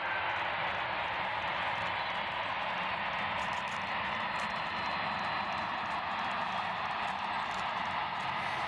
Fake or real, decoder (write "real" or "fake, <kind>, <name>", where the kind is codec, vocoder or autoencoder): real